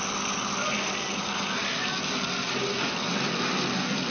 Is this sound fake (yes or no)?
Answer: no